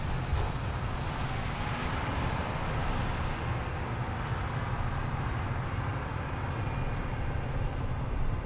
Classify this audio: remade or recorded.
recorded